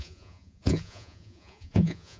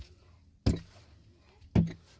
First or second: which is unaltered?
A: second